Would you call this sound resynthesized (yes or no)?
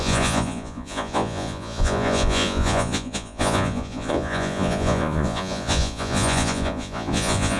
yes